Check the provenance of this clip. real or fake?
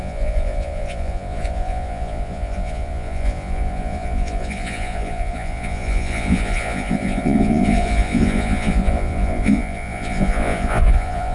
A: fake